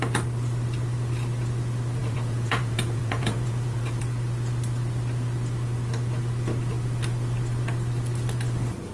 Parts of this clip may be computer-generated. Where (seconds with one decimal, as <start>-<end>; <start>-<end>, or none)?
2.0-4.0